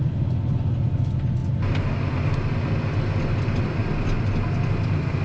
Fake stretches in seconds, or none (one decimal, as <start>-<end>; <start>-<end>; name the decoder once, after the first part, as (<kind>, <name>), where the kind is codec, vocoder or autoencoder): none